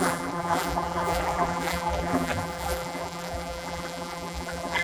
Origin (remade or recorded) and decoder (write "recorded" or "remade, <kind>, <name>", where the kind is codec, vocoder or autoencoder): remade, vocoder, BigVGAN v2